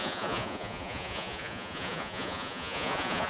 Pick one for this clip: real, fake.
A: fake